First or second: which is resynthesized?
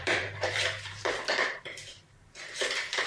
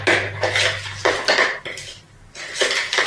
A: first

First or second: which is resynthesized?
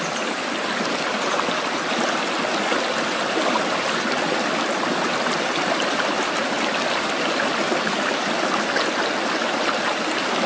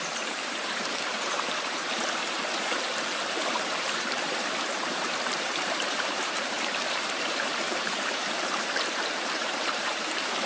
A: second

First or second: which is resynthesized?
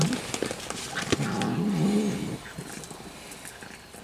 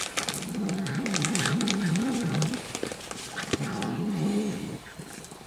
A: second